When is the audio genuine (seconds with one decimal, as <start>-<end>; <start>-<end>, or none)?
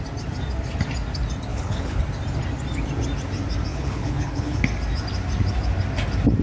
0.0-1.5; 2.0-3.7; 4.6-6.4